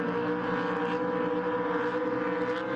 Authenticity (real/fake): real